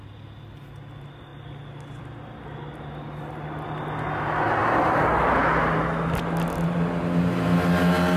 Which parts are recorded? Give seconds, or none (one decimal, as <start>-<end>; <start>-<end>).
0.0-8.2